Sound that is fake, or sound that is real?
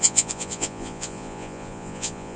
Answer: fake